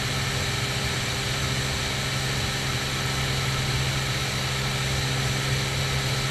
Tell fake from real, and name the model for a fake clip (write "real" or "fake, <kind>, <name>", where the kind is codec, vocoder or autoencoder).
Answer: real